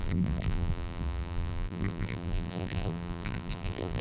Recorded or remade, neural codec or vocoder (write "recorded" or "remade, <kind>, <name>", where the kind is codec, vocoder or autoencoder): remade, vocoder, BigVGAN v2